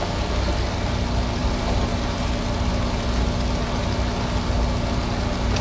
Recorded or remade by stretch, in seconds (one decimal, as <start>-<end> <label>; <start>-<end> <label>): 0.0-1.4 recorded; 1.4-2.3 remade; 2.3-5.6 recorded